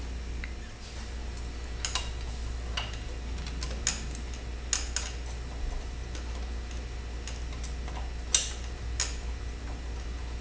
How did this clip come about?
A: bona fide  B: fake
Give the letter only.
A